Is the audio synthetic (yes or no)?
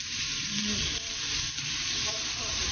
yes